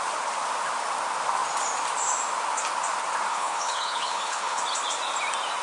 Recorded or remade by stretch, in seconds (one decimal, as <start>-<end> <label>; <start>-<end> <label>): 0.0-3.3 recorded; 3.3-4.6 remade; 4.6-5.6 recorded